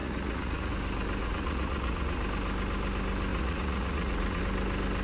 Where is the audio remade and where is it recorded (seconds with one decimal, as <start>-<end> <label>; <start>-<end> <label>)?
0.0-0.7 remade; 0.7-1.2 recorded; 1.2-2.2 remade; 2.2-3.3 recorded; 3.3-4.4 remade; 4.4-5.0 recorded